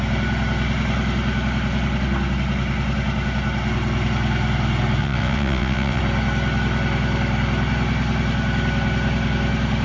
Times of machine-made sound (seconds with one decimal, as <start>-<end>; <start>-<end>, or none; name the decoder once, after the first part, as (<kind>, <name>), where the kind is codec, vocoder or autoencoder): 5.0-6.0 (vocoder, WaveNeXt)